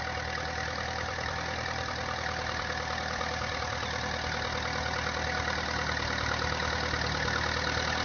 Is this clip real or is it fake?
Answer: real